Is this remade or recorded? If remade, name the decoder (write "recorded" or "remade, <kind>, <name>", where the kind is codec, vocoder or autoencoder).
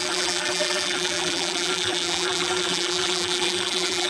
remade, vocoder, BigVGAN v2